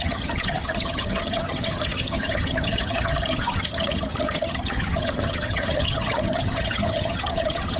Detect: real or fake fake